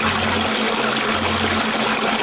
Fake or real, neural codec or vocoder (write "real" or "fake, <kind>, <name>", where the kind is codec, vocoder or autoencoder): real